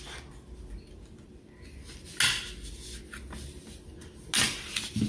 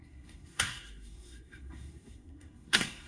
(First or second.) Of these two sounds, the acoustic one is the first